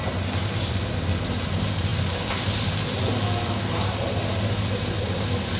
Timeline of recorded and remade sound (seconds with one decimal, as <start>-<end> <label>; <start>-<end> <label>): 0.0-5.6 recorded